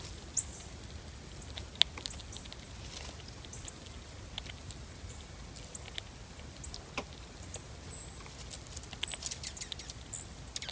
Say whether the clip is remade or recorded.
recorded